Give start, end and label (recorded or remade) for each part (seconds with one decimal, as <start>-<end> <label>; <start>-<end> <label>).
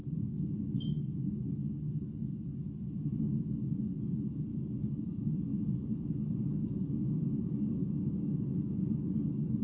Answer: 0.0-0.7 remade; 0.7-4.5 recorded; 4.5-7.9 remade; 7.9-9.6 recorded